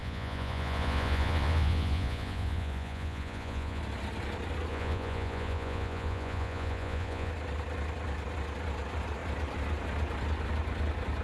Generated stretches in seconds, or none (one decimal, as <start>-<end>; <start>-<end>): 0.0-3.8; 4.7-7.3